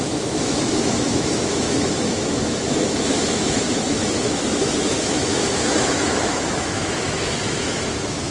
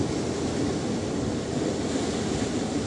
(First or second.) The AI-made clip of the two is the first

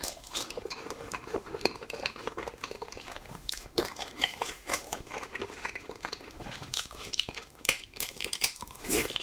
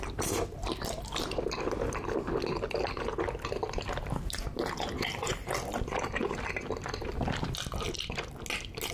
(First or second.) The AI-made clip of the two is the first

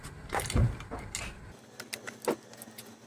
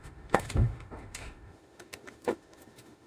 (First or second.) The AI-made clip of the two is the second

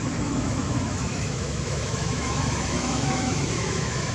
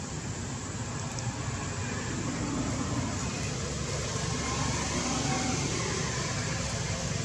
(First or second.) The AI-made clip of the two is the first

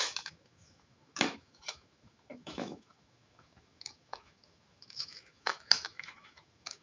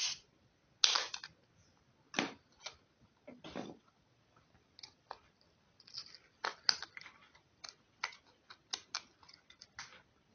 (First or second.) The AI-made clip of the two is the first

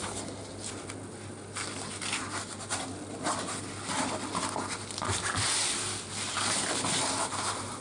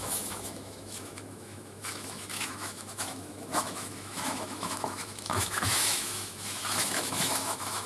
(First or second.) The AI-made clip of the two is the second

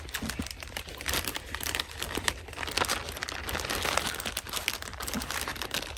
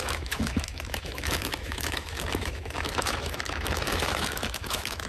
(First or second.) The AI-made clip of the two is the second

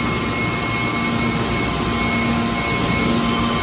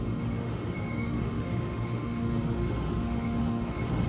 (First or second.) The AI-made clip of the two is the second